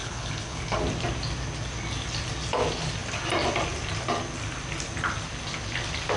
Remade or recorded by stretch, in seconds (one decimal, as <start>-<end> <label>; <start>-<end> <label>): 0.0-0.8 remade; 0.8-6.2 recorded